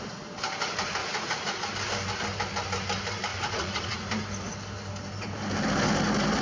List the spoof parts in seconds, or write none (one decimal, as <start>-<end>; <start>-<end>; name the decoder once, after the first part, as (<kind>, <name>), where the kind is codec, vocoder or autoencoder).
1.0-1.7 (vocoder, Vocos); 3.3-4.1